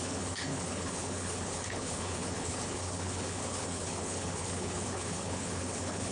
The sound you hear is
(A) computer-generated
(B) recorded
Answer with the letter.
A